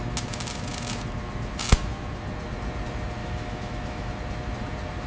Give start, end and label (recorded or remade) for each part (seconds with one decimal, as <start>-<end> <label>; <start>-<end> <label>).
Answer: 0.0-3.2 recorded; 3.2-4.1 remade; 4.1-5.1 recorded